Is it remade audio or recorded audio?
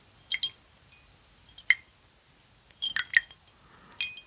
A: recorded